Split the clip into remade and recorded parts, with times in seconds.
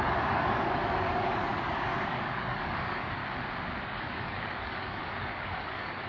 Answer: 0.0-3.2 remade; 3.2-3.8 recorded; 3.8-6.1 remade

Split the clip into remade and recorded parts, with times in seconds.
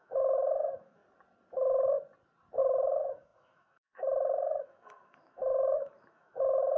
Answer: 0.0-1.0 remade; 1.0-2.6 recorded; 2.6-6.8 remade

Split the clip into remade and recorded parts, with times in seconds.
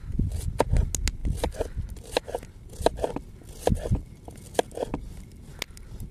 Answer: 0.0-1.2 recorded; 1.2-3.2 remade; 3.2-6.1 recorded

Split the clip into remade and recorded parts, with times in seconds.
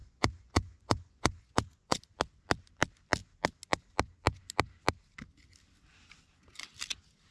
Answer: 0.0-2.0 remade; 2.0-7.3 recorded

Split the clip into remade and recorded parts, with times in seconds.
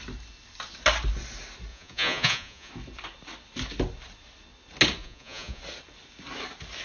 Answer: 0.0-1.7 recorded; 1.7-2.7 remade; 2.7-5.0 recorded; 5.0-5.6 remade; 5.6-6.8 recorded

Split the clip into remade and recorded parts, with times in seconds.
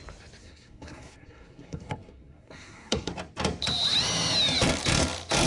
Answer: 0.0-0.4 recorded; 0.4-3.1 remade; 3.1-5.5 recorded